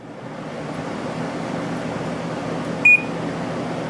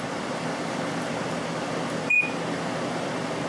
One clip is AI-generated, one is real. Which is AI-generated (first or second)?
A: second